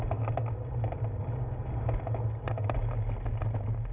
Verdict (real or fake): real